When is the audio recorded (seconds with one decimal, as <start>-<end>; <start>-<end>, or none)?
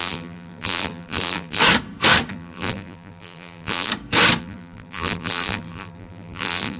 1.6-2.3; 3.9-4.4